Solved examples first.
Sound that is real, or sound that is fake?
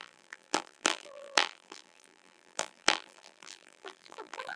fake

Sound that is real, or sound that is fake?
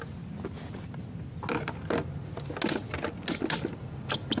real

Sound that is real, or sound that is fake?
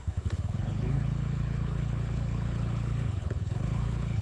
fake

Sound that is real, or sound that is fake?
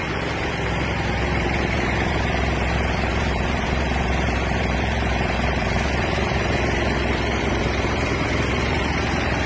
fake